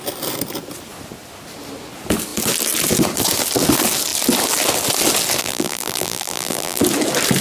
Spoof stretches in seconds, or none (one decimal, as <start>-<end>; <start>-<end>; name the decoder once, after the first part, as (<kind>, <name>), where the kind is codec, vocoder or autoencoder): 5.4-6.8 (vocoder, BigVGAN v2)